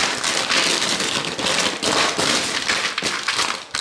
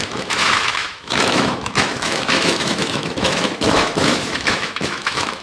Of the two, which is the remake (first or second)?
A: second